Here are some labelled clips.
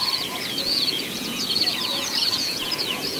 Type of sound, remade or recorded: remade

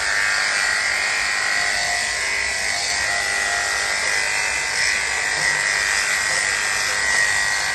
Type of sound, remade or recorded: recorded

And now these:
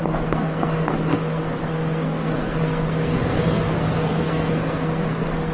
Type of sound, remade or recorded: remade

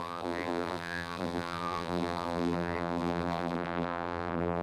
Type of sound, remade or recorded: remade